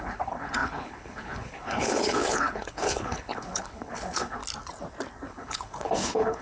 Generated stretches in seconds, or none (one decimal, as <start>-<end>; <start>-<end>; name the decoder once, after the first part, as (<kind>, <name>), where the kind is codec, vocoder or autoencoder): 0.0-4.4 (codec, HILCodec); 5.3-6.4